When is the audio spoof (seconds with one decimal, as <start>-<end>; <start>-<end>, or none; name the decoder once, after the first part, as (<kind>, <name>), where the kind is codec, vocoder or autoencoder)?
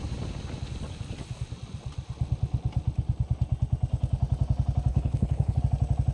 4.9-5.6 (codec, HILCodec)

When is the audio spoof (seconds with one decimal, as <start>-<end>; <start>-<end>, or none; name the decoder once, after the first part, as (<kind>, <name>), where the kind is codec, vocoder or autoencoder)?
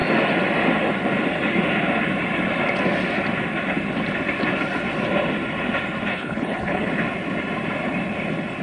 6.1-6.9 (codec, HILCodec)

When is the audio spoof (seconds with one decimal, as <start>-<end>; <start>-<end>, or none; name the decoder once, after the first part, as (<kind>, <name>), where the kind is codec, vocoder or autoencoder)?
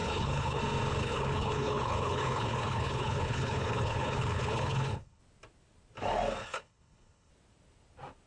0.0-0.6 (codec, HILCodec); 1.0-5.2; 6.4-7.3